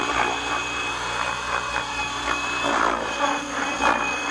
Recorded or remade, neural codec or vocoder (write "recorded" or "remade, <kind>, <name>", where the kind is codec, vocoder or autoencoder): remade, vocoder, BigVGAN v2